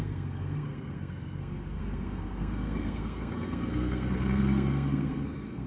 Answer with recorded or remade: remade